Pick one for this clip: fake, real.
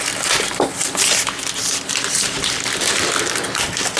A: fake